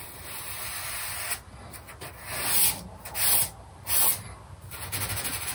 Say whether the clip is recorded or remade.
recorded